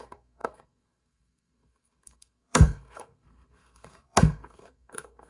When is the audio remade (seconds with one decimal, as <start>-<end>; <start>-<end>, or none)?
0.0-5.3